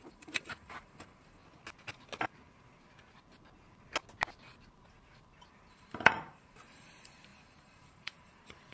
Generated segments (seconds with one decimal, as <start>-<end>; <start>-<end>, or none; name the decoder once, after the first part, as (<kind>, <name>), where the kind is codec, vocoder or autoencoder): 0.0-1.4 (vocoder, BigVGAN v2); 5.7-8.7